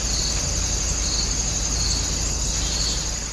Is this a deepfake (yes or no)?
no